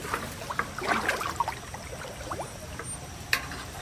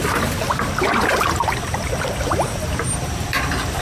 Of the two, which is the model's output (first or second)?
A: second